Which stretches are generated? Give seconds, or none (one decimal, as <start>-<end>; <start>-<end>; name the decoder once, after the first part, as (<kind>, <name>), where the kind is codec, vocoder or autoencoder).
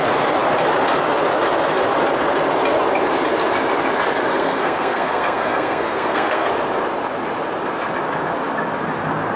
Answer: 4.3-6.5 (codec, SNAC)